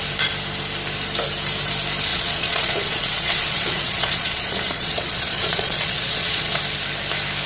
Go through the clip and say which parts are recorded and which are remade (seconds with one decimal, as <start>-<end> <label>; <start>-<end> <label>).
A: 0.0-2.1 recorded; 2.1-6.6 remade; 6.6-7.5 recorded

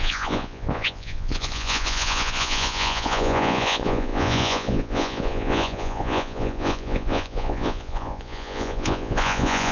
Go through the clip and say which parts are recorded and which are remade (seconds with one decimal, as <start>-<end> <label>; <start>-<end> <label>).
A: 0.0-9.7 remade